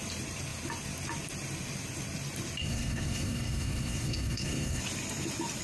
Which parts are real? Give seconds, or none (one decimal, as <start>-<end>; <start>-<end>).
0.0-2.6; 4.8-5.6